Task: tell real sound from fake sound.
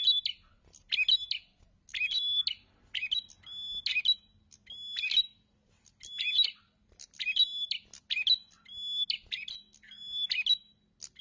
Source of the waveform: real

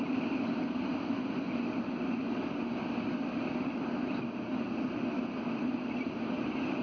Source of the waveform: real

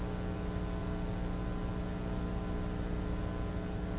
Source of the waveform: real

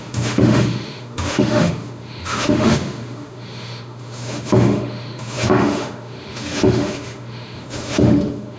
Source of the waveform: fake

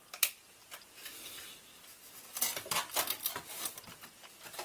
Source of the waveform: real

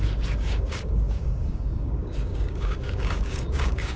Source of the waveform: fake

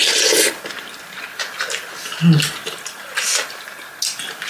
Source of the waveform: real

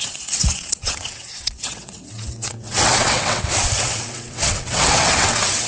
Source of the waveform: fake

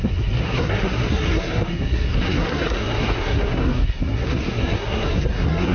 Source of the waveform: fake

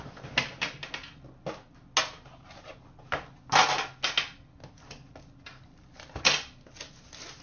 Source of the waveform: real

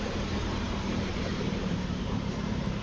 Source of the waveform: fake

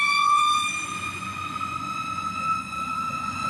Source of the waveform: fake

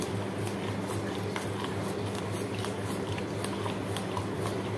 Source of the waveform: real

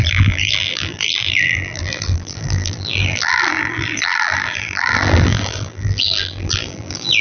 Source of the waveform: fake